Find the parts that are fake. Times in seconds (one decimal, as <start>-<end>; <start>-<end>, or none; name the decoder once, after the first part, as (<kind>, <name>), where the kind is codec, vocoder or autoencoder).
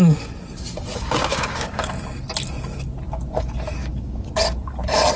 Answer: 0.9-1.9 (codec, DAC); 3.8-4.3